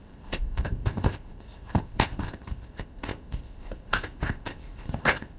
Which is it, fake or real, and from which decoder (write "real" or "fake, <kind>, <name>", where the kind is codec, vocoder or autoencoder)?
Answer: fake, codec, ZipCodec